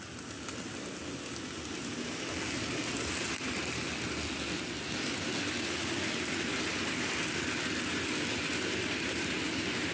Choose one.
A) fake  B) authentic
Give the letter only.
B